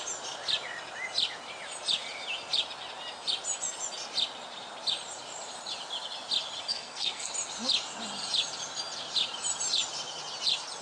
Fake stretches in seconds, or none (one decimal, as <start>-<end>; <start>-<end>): 6.7-7.3